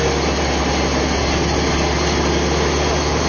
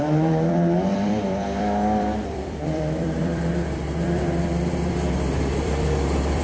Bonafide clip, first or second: first